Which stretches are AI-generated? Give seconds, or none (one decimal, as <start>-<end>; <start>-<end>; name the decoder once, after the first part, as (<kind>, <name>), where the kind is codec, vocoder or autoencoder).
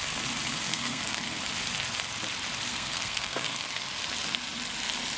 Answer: 0.7-1.4 (codec, SNAC); 2.7-3.6